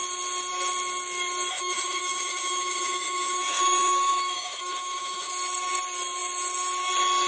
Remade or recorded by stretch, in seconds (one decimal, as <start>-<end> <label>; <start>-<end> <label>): 0.0-1.5 recorded; 1.5-5.3 remade; 5.3-7.3 recorded